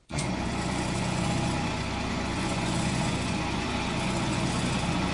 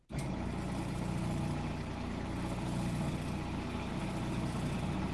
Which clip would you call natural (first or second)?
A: second